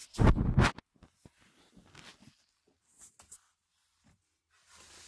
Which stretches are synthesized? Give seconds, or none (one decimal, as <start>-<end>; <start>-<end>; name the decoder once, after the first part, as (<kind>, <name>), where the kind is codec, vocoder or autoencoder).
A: none